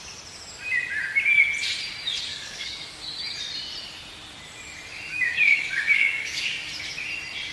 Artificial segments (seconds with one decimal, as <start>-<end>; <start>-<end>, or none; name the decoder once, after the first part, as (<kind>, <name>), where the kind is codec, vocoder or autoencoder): 2.3-3.0 (codec, DAC); 5.1-6.7